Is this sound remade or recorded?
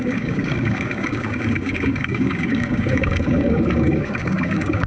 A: remade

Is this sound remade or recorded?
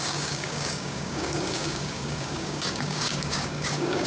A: remade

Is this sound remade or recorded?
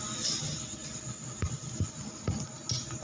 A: recorded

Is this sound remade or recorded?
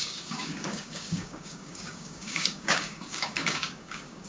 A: remade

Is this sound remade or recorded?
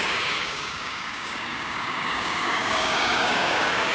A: remade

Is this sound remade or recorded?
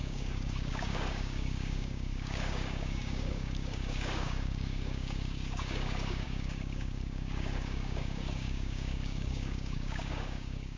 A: remade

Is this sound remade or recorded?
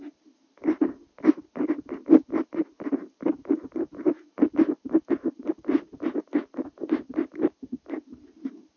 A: recorded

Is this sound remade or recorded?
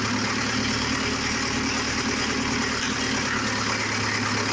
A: recorded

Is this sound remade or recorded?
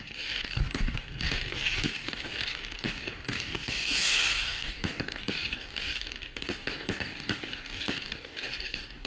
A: remade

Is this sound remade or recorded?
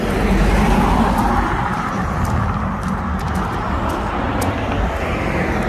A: recorded